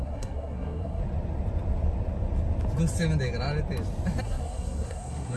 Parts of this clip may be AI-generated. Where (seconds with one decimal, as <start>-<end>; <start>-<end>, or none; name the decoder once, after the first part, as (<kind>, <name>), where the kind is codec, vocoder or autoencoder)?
0.0-1.0 (codec, SNAC); 4.2-5.4

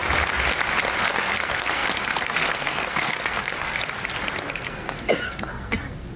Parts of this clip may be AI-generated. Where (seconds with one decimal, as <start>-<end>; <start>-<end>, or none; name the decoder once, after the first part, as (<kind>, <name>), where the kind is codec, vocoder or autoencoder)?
1.0-3.8 (codec, SNAC); 4.5-6.2